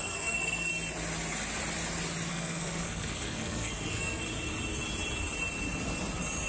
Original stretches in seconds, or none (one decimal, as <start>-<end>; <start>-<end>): 0.7-2.3; 4.2-6.5